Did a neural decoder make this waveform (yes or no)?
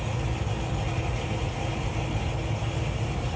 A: no